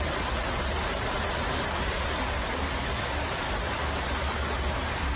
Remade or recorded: recorded